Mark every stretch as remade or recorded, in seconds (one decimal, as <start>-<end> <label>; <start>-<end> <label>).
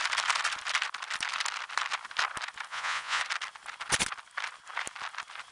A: 0.0-2.7 recorded; 2.7-3.2 remade; 3.2-5.5 recorded